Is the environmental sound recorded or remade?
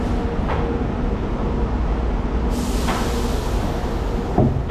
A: recorded